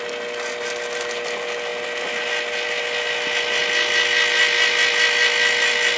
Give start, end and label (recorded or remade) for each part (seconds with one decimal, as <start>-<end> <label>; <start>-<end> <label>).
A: 0.0-3.6 recorded; 3.6-6.0 remade